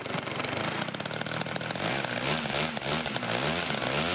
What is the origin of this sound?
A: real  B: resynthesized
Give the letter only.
A